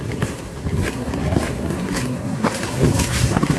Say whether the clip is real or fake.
fake